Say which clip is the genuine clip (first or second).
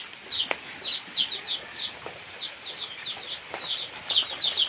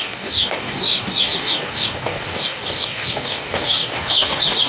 first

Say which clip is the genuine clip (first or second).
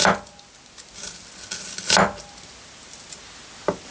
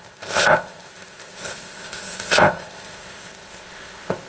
first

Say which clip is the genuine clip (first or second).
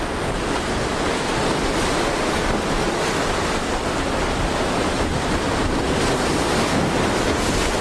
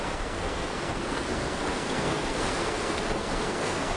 first